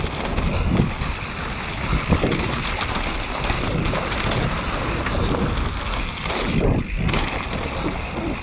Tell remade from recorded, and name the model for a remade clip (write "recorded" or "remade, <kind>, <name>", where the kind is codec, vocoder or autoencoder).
recorded